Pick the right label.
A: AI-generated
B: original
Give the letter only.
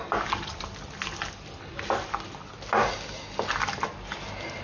B